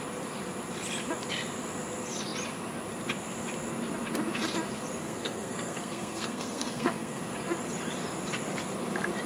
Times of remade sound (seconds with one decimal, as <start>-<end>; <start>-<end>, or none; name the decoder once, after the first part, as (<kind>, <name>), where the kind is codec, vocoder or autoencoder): 5.0-7.2 (codec, SNAC)